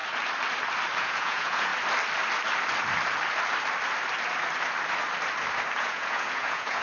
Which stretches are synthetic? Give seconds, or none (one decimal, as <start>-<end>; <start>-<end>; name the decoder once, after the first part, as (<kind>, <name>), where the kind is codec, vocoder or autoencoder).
1.0-1.7 (vocoder, Vocos); 5.8-6.8